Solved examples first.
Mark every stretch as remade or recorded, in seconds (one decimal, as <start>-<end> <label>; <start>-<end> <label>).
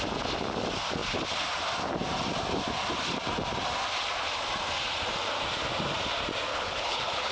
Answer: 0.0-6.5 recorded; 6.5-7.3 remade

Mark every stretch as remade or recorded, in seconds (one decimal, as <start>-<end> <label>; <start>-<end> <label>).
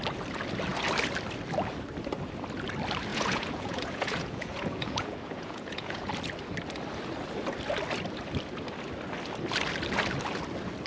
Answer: 0.0-3.1 recorded; 3.1-6.1 remade; 6.1-10.9 recorded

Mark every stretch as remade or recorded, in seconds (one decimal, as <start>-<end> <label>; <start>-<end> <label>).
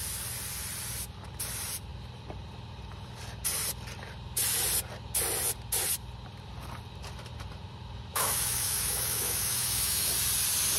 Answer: 0.0-8.1 recorded; 8.1-10.1 remade; 10.1-10.8 recorded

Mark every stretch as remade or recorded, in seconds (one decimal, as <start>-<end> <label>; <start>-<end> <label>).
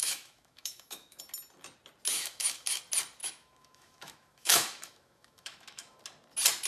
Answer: 0.0-1.2 remade; 1.2-2.1 recorded; 2.1-2.8 remade; 2.8-3.2 recorded; 3.2-6.0 remade; 6.0-6.7 recorded